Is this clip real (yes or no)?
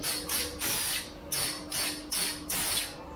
yes